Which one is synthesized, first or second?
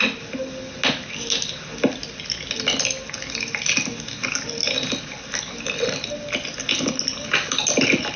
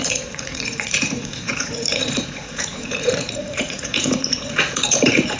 second